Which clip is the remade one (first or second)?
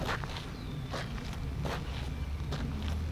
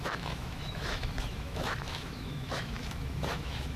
second